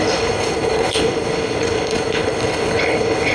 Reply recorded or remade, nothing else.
remade